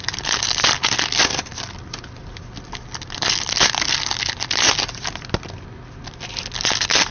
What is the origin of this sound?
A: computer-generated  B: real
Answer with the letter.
B